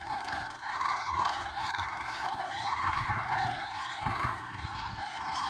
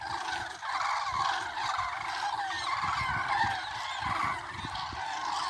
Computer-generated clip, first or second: first